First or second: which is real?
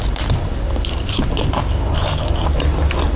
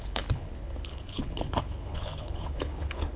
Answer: first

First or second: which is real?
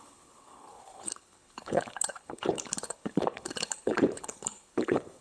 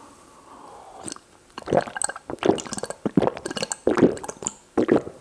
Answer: second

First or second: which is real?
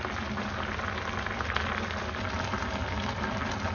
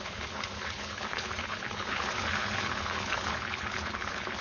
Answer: first